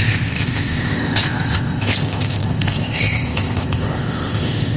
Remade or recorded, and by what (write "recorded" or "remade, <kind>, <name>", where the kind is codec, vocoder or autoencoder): remade, codec, ZipCodec